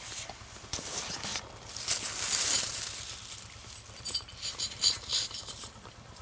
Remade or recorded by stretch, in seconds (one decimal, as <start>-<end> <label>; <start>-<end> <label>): 0.0-1.3 remade; 1.3-4.5 recorded; 4.5-6.2 remade